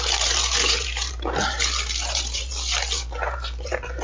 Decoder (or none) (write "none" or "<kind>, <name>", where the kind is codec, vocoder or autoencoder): vocoder, BigVGAN v2